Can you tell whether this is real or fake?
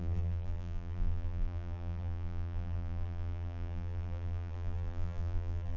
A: fake